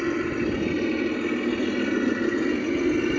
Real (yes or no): yes